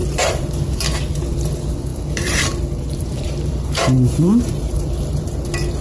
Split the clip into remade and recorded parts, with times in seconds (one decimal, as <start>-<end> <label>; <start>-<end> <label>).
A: 0.0-0.8 remade; 0.8-1.9 recorded; 1.9-5.2 remade; 5.2-5.8 recorded